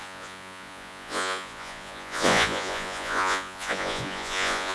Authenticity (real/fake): fake